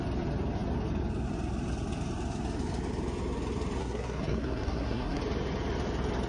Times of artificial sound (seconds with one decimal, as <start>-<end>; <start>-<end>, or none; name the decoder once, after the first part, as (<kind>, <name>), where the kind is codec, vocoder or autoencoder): 3.8-5.2 (codec, SNAC)